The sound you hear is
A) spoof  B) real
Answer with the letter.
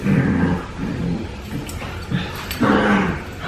B